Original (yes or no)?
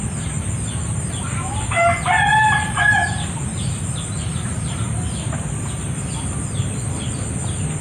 yes